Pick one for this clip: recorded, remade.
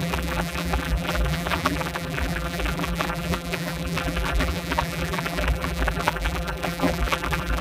remade